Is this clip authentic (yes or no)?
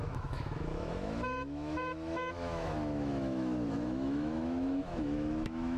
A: no